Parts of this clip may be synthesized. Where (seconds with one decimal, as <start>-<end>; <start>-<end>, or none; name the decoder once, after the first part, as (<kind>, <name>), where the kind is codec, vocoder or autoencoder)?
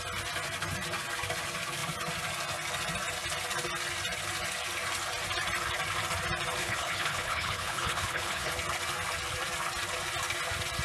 6.6-8.5 (codec, HILCodec)